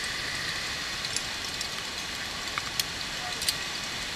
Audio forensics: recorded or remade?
recorded